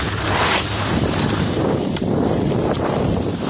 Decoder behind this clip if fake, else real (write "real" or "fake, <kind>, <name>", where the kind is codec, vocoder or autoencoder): fake, vocoder, BigVGAN v2